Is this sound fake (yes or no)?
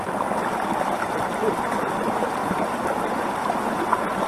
no